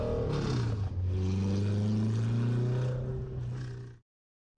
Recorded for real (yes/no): yes